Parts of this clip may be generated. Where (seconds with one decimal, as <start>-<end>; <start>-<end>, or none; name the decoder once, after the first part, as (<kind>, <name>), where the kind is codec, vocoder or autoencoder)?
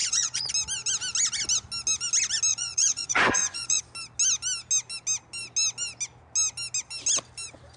0.0-0.5 (vocoder, Vocos); 2.5-3.8